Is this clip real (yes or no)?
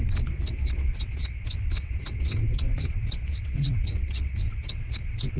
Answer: no